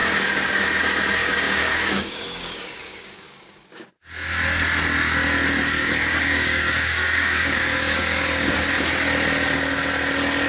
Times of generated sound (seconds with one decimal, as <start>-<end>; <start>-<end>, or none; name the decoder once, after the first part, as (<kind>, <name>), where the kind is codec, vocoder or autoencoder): 0.0-0.6 (codec, DAC); 1.2-3.9; 5.8-8.7